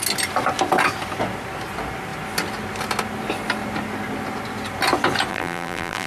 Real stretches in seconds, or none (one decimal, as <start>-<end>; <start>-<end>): 0.0-5.3